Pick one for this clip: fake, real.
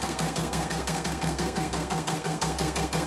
fake